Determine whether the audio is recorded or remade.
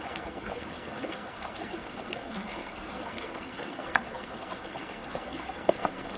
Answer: remade